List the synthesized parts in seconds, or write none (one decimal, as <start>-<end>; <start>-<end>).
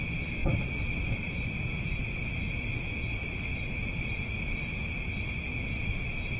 0.4-2.0; 3.5-4.3; 5.5-6.4